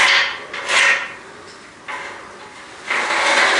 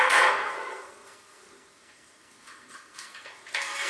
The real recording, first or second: first